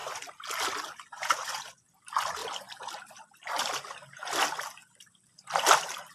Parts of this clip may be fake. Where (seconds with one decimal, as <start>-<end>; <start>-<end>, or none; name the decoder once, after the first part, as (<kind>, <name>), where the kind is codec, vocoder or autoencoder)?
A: 1.7-6.1 (vocoder, BigVGAN v2)